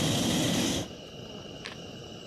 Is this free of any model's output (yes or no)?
yes